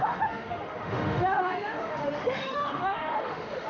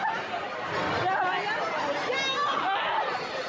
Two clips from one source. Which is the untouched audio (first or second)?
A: second